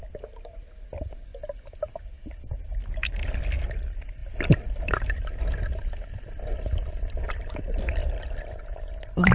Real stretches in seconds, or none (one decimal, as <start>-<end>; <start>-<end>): 0.0-4.2; 7.3-8.0; 8.6-9.3